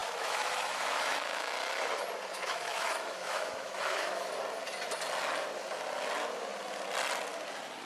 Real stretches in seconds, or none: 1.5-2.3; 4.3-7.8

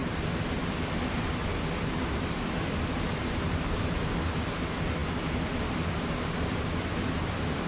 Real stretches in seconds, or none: 0.0-7.7

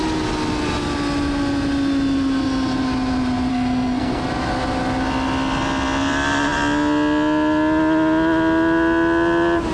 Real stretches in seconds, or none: 0.0-3.5; 4.2-9.7